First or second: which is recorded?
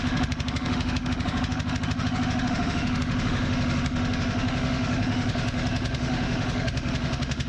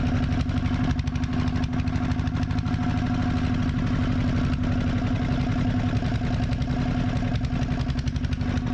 second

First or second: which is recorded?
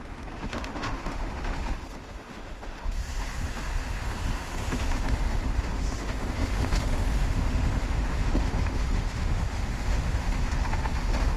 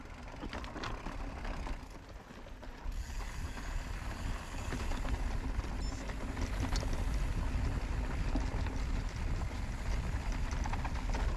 second